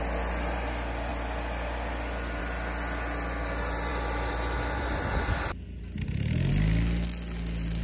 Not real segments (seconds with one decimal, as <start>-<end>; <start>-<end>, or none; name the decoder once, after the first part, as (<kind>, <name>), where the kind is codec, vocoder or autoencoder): none